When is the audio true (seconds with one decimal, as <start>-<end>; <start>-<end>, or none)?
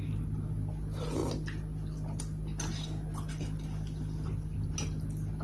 0.0-5.4